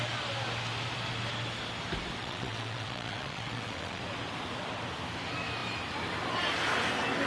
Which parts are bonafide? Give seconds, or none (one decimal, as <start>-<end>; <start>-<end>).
0.0-2.2; 4.0-7.3

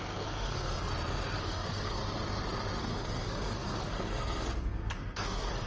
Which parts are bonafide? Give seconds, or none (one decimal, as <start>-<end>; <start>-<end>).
0.9-1.4; 2.0-2.8

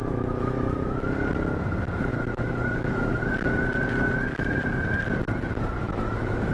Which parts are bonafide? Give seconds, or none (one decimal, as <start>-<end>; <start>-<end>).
1.0-2.1; 3.2-5.8

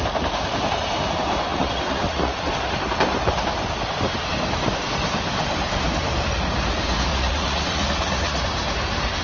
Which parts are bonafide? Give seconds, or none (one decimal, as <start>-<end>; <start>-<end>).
0.0-1.5; 2.5-7.1; 8.4-9.2

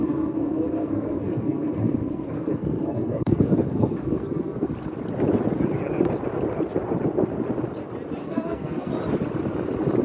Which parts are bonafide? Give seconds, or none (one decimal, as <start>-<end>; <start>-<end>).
4.7-8.2; 8.9-10.0